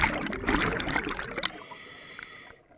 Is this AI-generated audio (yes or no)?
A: no